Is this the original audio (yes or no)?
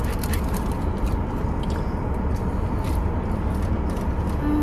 yes